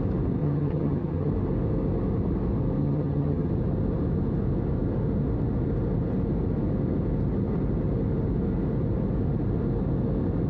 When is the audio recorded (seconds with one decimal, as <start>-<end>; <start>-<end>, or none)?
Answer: 0.0-0.4; 1.3-2.8; 3.5-10.5